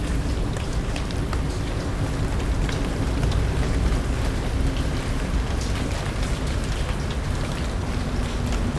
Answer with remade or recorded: recorded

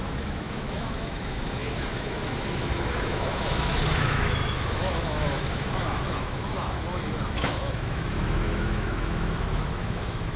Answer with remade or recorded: remade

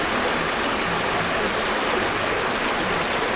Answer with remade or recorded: recorded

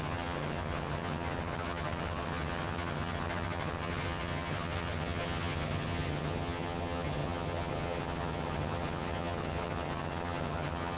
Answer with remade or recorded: remade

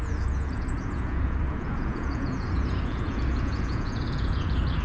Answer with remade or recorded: remade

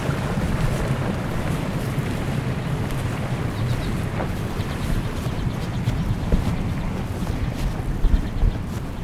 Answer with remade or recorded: recorded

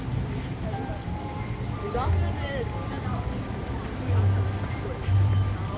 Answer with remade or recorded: remade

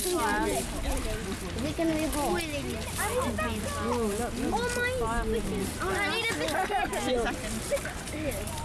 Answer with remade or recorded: recorded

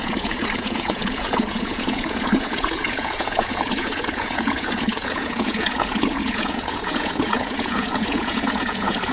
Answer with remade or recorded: remade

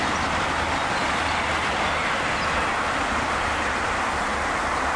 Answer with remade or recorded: recorded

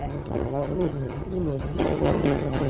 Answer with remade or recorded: remade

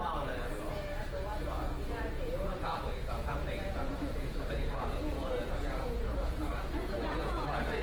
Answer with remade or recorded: remade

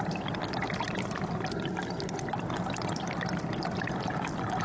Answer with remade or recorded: recorded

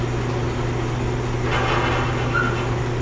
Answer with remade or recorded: recorded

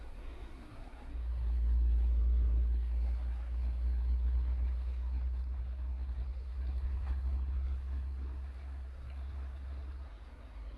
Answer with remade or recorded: remade